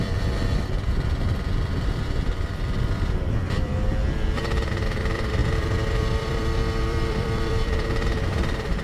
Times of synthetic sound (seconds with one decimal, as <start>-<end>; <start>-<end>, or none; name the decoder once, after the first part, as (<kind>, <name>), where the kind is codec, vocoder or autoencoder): 0.0-8.8 (vocoder, BigVGAN v2)